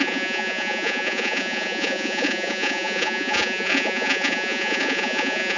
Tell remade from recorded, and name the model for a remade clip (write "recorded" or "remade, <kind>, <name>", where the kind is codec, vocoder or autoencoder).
remade, vocoder, Vocos